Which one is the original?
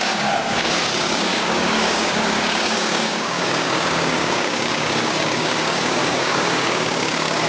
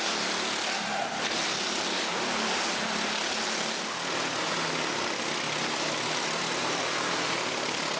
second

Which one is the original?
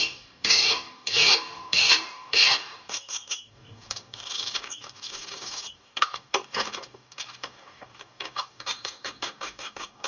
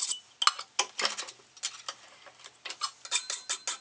second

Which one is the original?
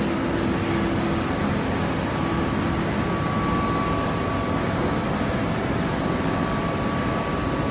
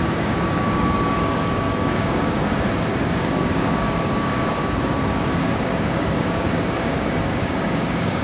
first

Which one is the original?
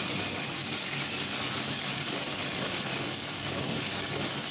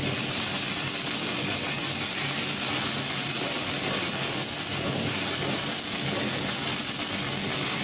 second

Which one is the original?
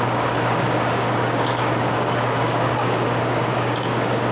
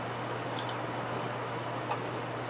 second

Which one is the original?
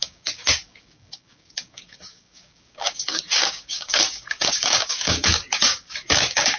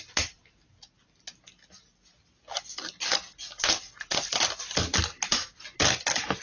second